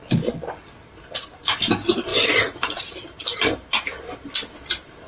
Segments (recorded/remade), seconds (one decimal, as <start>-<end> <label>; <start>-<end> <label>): 0.0-5.1 recorded